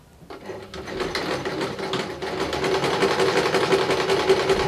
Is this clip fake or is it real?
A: real